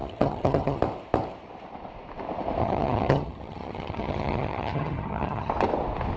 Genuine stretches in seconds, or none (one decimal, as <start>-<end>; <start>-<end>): 0.8-2.6; 5.5-6.2